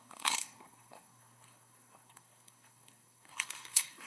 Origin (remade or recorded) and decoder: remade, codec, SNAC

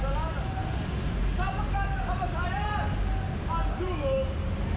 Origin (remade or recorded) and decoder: recorded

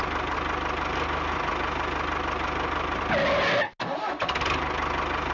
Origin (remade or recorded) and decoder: recorded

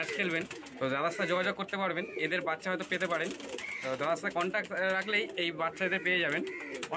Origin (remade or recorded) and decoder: recorded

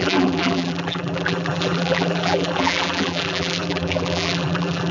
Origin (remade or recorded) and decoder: remade, vocoder, BigVGAN v2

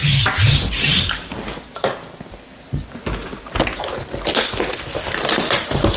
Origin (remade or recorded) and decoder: recorded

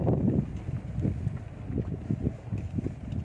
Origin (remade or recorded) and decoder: recorded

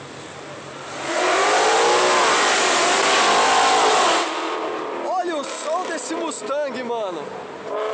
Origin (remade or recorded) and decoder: recorded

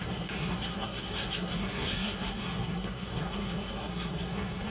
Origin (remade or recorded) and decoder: remade, codec, SNAC